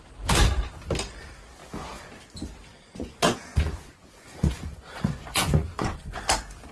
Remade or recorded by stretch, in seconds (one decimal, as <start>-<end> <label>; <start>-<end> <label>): 0.0-1.6 recorded; 1.6-2.1 remade; 2.1-2.7 recorded; 2.7-6.2 remade; 6.2-6.7 recorded